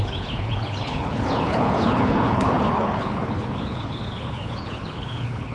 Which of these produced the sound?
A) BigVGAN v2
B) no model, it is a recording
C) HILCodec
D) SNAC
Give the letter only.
C